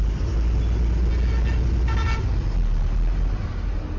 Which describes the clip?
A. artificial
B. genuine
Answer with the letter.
B